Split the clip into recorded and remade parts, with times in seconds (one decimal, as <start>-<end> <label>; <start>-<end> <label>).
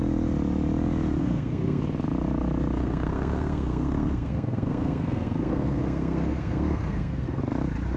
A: 0.0-1.2 recorded; 1.2-1.8 remade; 1.8-2.8 recorded; 2.8-7.4 remade; 7.4-8.0 recorded